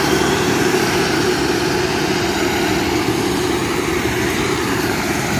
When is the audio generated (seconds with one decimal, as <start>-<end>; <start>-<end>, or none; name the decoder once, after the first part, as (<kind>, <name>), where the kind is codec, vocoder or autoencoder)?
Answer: 3.6-5.4 (vocoder, BigVGAN v2)